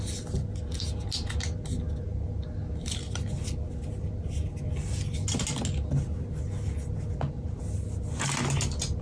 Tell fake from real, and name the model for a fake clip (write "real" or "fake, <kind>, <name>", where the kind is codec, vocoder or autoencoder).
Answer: real